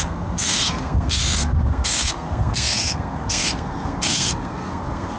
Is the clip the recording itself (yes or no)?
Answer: no